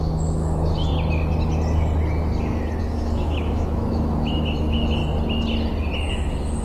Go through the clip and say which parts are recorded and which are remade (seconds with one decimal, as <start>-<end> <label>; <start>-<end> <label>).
0.0-0.9 remade; 0.9-2.8 recorded; 2.8-5.0 remade; 5.0-6.1 recorded; 6.1-6.6 remade